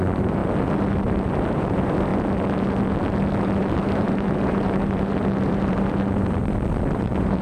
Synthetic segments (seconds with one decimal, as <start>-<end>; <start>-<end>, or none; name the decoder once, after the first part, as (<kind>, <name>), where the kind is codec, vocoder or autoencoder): 0.0-0.4 (vocoder, BigVGAN v2); 1.5-2.1; 3.6-6.4; 6.9-7.4